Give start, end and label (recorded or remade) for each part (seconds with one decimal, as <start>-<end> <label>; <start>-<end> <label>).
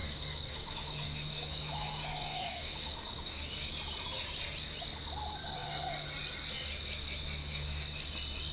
0.0-3.7 remade; 3.7-7.4 recorded; 7.4-8.1 remade; 8.1-8.5 recorded